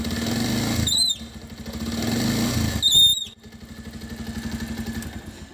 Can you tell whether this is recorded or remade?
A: recorded